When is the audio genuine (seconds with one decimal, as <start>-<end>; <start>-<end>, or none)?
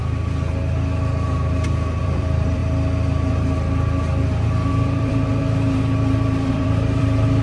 0.0-2.0; 2.6-4.7; 5.3-6.5